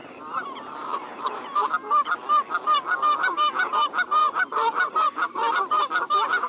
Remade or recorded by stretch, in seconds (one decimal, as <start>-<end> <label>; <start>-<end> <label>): 0.0-2.2 remade; 2.2-3.0 recorded; 3.0-6.5 remade